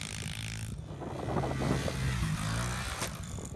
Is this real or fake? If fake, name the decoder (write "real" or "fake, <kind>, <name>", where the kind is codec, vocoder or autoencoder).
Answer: real